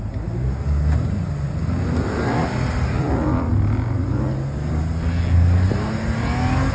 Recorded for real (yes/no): yes